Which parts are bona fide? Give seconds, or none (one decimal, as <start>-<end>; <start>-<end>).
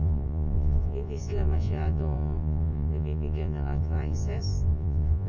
none